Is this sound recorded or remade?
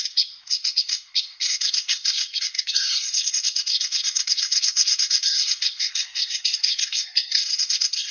remade